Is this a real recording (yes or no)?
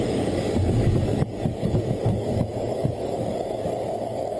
no